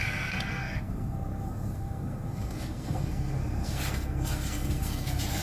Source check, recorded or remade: remade